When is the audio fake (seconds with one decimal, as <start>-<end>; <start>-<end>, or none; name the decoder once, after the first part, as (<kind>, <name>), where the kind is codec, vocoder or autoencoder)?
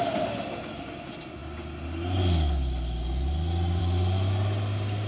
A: none